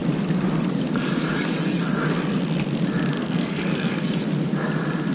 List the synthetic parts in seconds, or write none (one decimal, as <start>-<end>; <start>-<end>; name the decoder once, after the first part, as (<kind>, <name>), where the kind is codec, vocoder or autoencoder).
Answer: 3.2-4.1 (codec, SNAC)